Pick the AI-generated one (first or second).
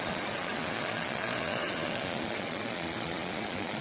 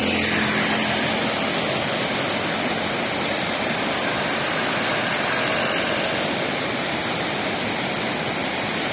first